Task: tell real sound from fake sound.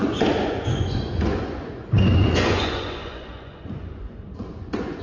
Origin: fake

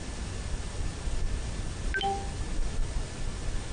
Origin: real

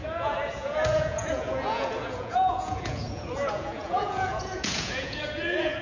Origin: fake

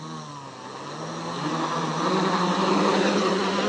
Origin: real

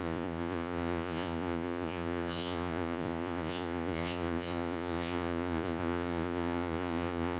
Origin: fake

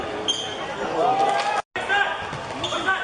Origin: real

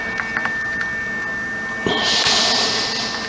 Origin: real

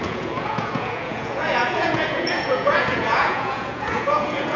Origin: fake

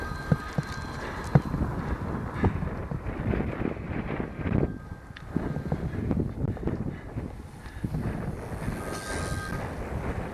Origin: real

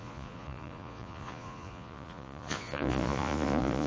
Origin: fake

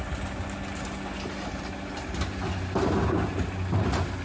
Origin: real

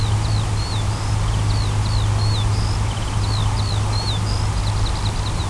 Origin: real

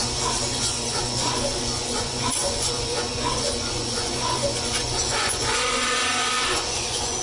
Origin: fake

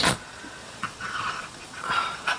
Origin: fake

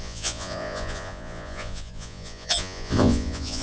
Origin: fake